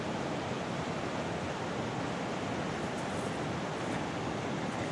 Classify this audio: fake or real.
real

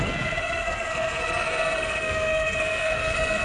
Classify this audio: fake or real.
fake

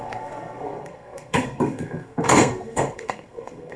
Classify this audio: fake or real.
fake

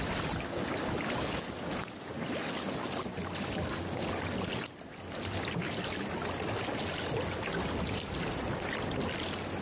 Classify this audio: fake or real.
real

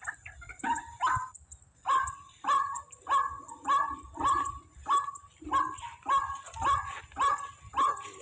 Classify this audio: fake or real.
real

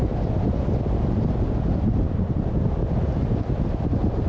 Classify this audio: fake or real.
real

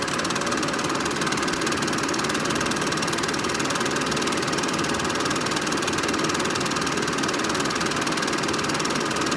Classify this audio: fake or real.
real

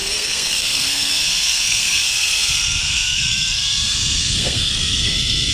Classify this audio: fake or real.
fake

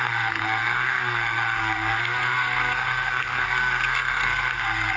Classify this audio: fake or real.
fake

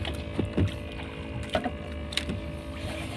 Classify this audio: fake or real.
real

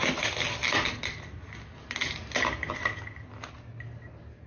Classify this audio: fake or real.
real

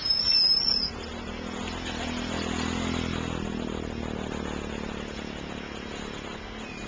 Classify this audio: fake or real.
real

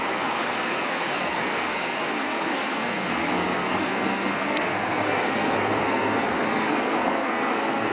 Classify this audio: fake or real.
fake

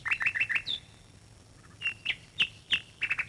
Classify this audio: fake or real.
real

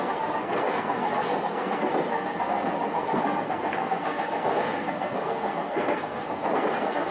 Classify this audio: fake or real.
fake